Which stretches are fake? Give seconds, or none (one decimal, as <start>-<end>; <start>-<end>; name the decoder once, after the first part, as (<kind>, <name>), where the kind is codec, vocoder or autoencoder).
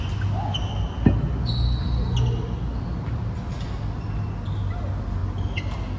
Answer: none